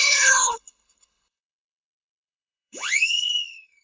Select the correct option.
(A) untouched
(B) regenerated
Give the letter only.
B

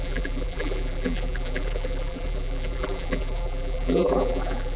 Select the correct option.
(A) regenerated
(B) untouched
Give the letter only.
A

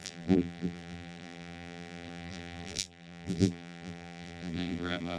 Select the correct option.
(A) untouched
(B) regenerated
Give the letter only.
B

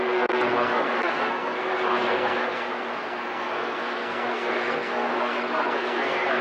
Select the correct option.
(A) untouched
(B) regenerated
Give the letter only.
B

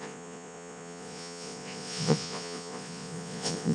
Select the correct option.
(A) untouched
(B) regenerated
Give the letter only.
B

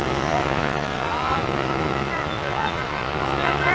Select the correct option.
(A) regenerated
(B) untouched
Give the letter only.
A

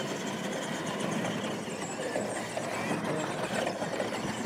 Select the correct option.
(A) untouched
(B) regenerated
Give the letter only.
A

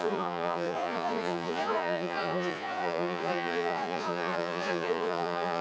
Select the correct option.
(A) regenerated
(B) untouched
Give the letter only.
A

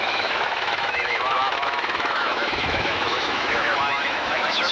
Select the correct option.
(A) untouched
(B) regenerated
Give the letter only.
B